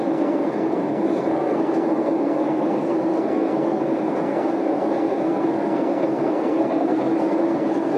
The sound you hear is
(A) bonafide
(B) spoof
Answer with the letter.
B